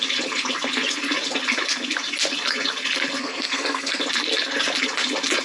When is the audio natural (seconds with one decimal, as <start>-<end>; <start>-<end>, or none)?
0.0-3.2; 4.0-5.4